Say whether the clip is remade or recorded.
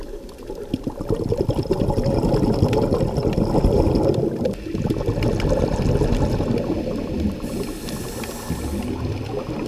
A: recorded